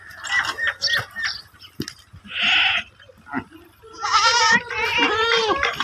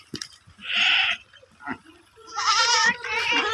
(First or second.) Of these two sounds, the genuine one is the first